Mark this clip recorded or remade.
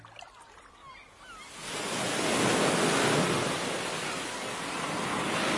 recorded